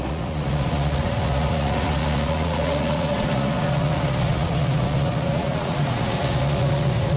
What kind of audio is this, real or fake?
fake